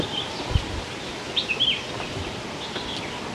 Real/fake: real